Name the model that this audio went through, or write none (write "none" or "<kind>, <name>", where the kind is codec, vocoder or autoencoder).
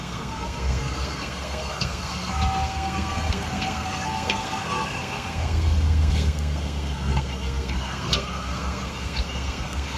codec, SNAC